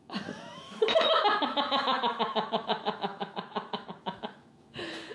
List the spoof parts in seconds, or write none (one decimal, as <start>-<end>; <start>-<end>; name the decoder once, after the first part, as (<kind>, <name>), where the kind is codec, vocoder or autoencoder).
0.0-5.1 (autoencoder, DAC-VAE)